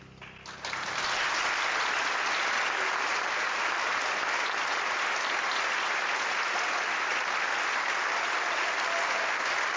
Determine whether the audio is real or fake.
real